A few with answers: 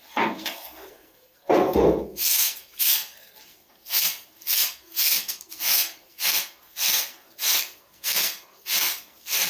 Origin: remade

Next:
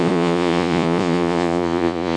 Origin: remade